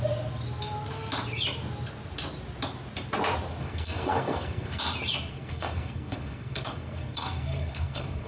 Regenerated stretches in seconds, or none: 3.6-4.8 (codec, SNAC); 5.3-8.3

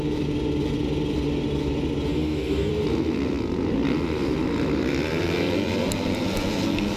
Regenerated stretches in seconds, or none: 2.1-2.7 (codec, DAC)

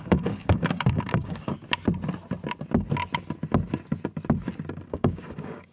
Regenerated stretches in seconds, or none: 0.0-1.5 (codec, DAC); 4.9-5.7

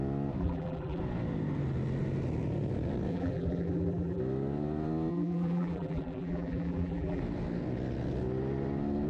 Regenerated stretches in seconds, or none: 0.4-1.0 (vocoder, BigVGAN v2); 3.1-4.2; 5.1-7.2